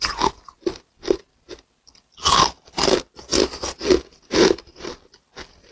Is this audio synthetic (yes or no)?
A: no